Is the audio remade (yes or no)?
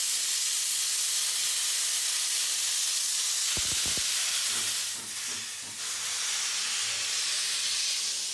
no